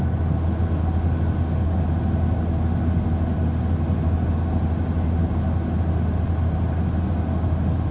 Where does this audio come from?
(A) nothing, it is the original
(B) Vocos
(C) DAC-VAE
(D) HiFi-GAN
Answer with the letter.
A